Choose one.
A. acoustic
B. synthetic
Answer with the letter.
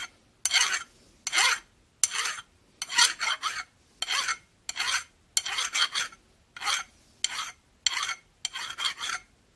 A